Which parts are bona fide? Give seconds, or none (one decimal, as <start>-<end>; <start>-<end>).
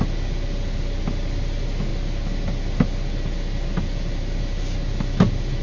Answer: 0.0-5.6